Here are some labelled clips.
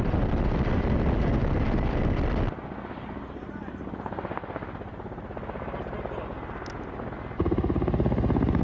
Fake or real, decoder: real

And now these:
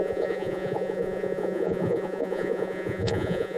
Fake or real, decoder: fake, vocoder, Vocos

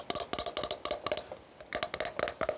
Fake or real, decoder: real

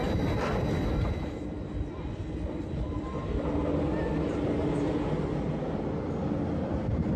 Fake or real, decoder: real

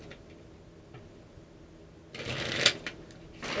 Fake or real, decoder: real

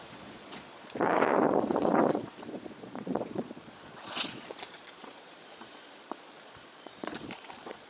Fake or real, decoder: fake, vocoder, Vocos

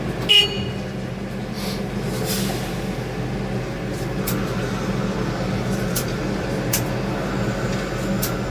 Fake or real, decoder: real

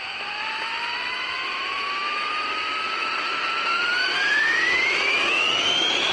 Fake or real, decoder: fake, autoencoder, DAC-VAE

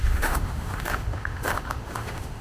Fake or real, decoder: fake, autoencoder, DAC-VAE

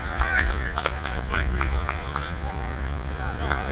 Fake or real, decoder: fake, vocoder, Vocos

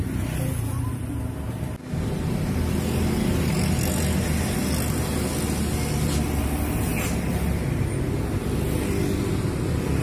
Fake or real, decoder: real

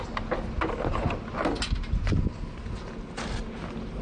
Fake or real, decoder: real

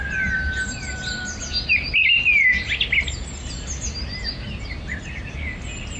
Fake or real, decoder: real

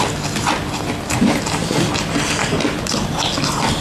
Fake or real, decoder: real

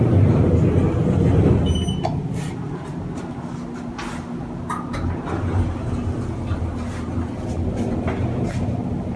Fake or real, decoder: real